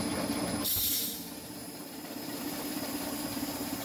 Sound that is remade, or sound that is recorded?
remade